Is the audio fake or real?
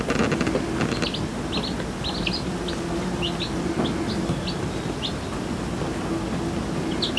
real